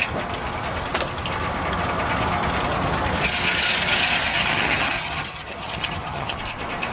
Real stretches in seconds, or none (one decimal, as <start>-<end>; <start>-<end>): 0.0-4.3; 6.4-6.9